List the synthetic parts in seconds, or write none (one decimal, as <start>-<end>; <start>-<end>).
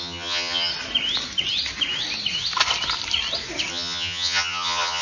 0.0-0.7; 3.7-5.0